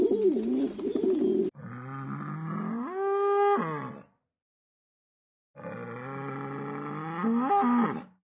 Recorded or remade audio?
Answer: recorded